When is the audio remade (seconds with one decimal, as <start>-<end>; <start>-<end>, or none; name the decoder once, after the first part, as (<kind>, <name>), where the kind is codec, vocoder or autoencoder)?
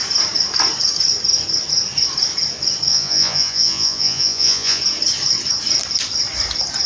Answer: 2.9-4.8 (vocoder, Vocos)